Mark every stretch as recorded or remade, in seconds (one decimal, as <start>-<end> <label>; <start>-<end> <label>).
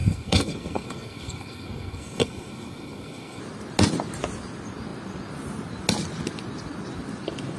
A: 0.0-3.4 remade; 3.4-7.6 recorded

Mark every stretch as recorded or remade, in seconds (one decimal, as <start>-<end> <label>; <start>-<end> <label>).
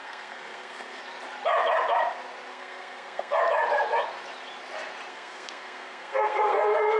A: 0.0-1.0 remade; 1.0-2.5 recorded; 2.5-3.4 remade; 3.4-5.1 recorded; 5.1-7.0 remade